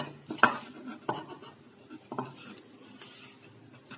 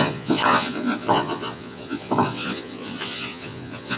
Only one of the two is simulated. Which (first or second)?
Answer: second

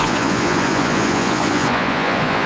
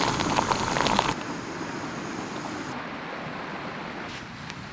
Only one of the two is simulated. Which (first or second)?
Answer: first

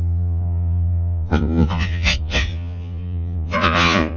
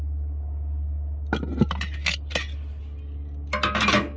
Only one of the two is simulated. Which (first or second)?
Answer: first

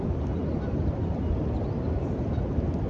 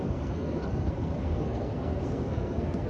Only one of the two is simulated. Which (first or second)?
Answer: second